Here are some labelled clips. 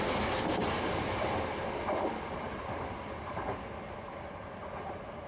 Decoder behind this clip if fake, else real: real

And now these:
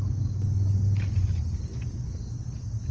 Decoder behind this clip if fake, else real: real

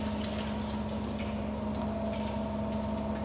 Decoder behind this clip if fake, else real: real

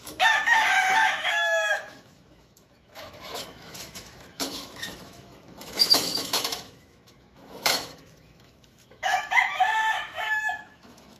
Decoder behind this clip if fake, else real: fake, autoencoder, DAC-VAE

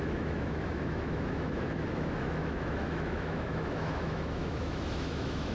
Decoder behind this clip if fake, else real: fake, autoencoder, DAC-VAE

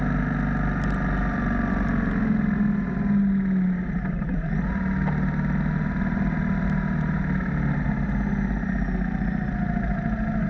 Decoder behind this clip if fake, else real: real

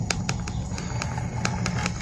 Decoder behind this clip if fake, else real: real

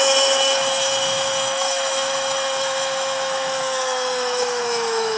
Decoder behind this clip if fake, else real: fake, autoencoder, DAC-VAE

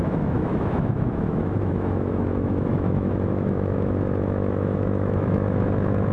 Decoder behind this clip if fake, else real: fake, autoencoder, DAC-VAE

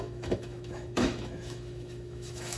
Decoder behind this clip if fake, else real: fake, autoencoder, DAC-VAE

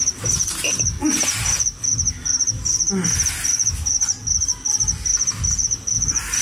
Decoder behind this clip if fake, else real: real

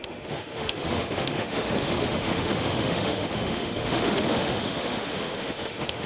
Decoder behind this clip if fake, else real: fake, autoencoder, DAC-VAE